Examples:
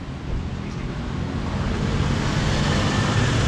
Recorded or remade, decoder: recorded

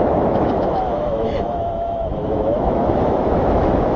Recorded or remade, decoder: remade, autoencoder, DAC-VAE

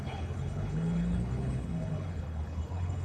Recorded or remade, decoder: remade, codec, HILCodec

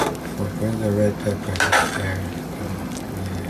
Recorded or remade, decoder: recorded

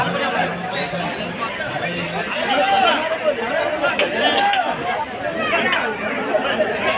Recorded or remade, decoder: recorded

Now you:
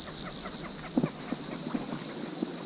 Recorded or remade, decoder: recorded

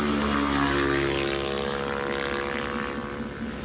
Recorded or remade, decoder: recorded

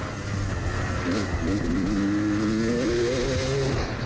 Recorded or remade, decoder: recorded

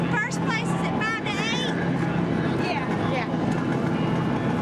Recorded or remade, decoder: recorded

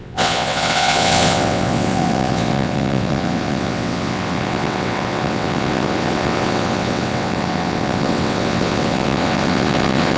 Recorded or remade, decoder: remade, vocoder, WaveNeXt